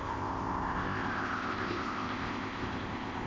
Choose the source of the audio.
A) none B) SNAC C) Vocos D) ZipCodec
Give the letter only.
D